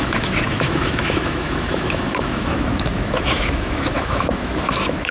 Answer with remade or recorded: remade